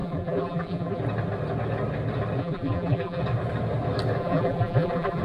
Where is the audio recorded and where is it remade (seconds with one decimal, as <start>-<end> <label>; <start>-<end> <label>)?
0.0-1.0 remade; 1.0-2.4 recorded; 2.4-3.2 remade; 3.2-4.2 recorded; 4.2-5.2 remade